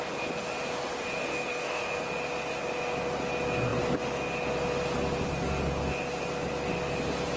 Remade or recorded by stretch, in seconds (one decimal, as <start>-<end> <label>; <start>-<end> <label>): 0.0-1.2 recorded; 1.2-2.0 remade; 2.0-7.4 recorded